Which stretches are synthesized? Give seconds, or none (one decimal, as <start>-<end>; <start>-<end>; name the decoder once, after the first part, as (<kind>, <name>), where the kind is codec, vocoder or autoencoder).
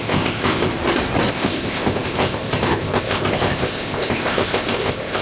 0.0-0.7 (codec, ZipCodec); 1.3-5.2